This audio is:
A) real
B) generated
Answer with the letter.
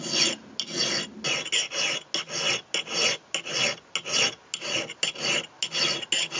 A